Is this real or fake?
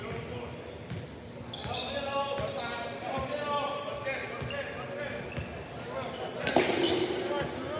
real